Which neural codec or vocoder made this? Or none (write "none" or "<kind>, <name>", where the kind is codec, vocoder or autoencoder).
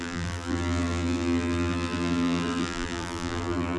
vocoder, BigVGAN v2